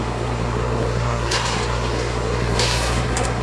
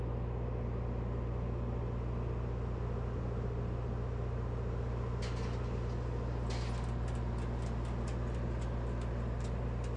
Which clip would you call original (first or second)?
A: second